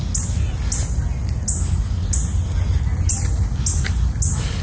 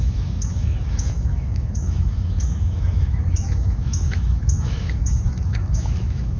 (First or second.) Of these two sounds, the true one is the first